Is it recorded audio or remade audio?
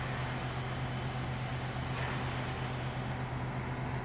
recorded